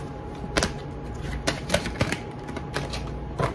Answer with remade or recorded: recorded